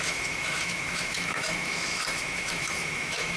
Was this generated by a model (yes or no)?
yes